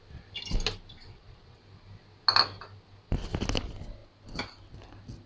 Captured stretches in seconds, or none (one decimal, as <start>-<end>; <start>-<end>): 0.0-0.9; 1.6-5.3